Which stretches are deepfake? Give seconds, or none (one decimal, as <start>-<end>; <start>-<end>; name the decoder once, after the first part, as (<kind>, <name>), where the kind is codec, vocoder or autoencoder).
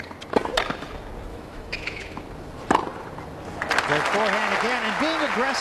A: 1.3-2.2 (autoencoder, DAC-VAE)